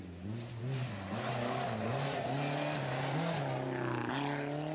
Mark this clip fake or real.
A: real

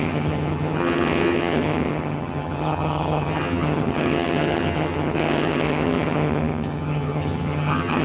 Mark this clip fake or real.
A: fake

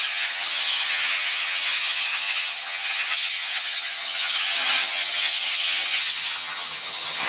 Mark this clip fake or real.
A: fake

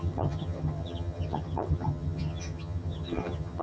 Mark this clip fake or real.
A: fake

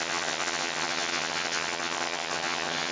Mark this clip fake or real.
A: fake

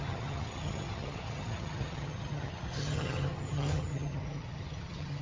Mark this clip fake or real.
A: fake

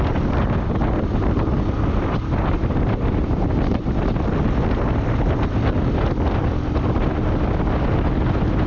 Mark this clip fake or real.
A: real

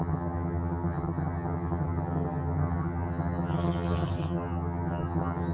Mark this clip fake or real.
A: fake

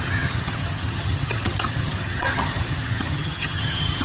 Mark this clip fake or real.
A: fake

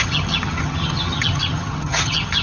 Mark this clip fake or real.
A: fake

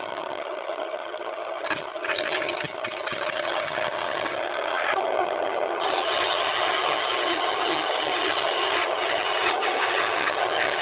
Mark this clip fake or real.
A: fake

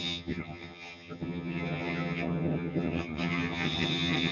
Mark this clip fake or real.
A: fake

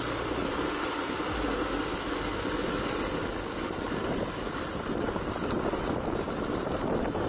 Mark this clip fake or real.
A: real